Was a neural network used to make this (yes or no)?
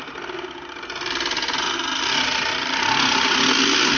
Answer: no